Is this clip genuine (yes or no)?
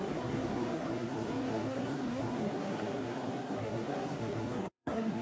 no